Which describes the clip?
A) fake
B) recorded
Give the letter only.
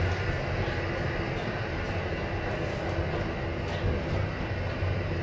B